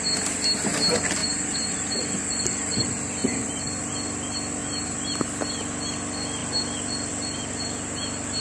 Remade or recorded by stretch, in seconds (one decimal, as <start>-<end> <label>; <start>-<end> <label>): 0.0-1.2 recorded; 1.2-2.2 remade; 2.2-3.2 recorded; 3.2-3.9 remade; 3.9-4.6 recorded; 4.6-5.1 remade; 5.1-8.4 recorded